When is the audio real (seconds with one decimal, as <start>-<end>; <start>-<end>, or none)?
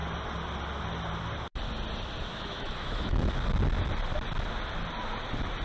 0.0-2.3; 3.4-5.6